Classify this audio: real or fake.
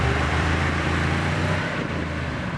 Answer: fake